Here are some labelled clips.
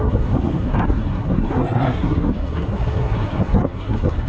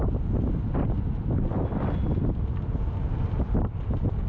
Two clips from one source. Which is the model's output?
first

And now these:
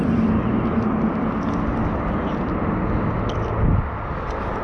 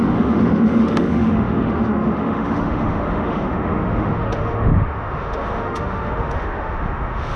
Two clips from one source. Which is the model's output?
second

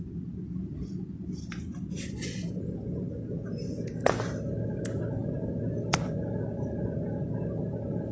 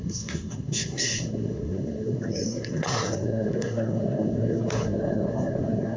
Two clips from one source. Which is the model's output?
second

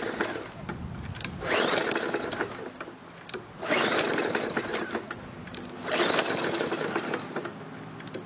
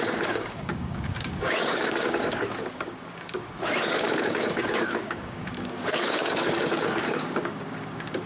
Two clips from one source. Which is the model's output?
second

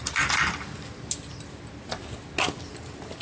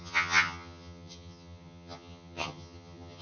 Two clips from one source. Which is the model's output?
second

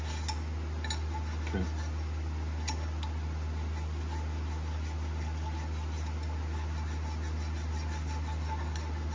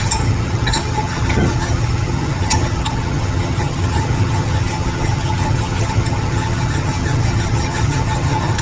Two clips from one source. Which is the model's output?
second